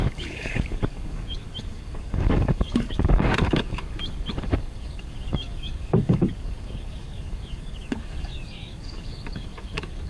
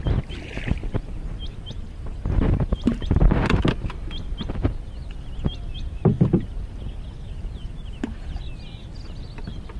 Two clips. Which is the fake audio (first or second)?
first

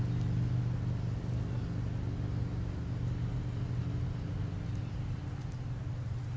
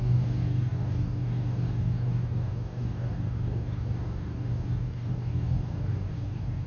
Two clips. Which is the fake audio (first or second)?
second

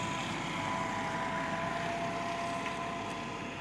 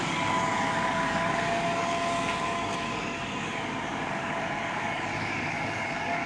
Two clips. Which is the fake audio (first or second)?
second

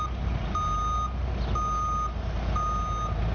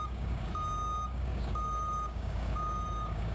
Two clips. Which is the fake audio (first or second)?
second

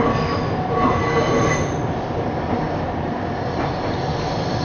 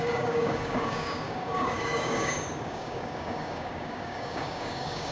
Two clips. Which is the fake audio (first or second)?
second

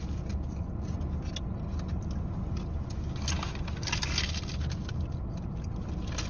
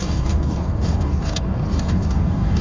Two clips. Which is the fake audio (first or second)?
second